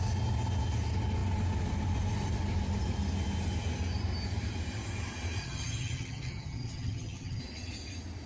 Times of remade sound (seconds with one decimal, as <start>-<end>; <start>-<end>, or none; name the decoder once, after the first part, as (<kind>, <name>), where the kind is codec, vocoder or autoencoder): 5.4-7.4 (vocoder, HiFi-GAN)